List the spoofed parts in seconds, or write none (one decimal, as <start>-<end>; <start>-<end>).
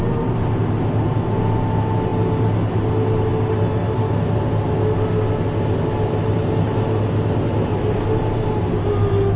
none